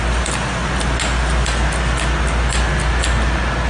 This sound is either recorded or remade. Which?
recorded